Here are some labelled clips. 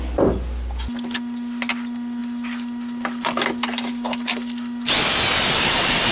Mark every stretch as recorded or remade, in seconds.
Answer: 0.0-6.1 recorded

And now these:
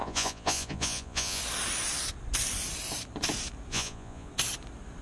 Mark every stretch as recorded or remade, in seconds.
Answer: 0.0-1.4 remade; 1.4-3.7 recorded; 3.7-4.3 remade; 4.3-5.0 recorded

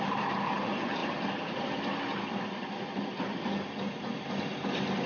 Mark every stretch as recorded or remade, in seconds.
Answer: 0.0-5.1 recorded

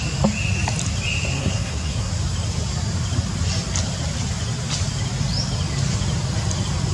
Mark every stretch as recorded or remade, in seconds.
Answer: 0.0-1.4 recorded; 1.4-2.1 remade; 2.1-6.9 recorded

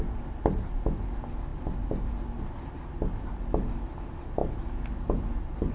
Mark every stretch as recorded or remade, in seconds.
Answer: 0.0-5.7 recorded

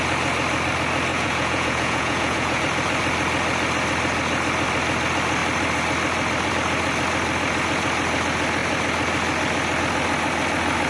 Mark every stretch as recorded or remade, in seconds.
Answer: 0.0-1.1 recorded; 1.1-2.6 remade; 2.6-10.9 recorded

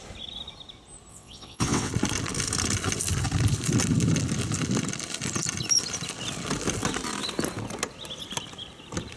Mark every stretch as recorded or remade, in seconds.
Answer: 0.0-1.1 recorded; 1.1-1.9 remade; 1.9-9.2 recorded